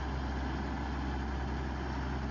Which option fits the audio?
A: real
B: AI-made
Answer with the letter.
A